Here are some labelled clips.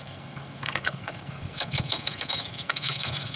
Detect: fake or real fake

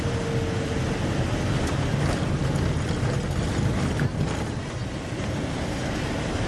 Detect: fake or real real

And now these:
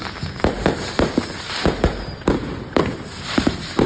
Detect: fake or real fake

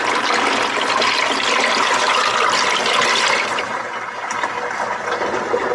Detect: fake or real real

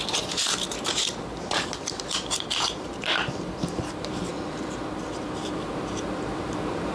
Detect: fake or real fake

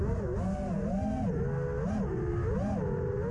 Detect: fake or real real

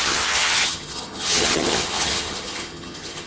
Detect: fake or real fake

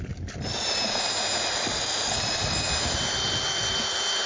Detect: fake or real real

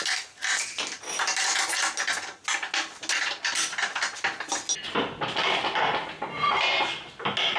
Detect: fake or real real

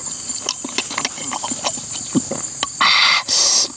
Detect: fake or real real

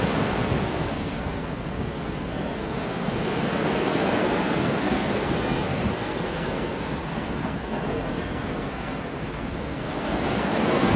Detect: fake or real fake